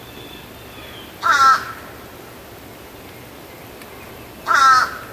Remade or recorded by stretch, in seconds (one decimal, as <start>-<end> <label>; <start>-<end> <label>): 0.0-5.1 recorded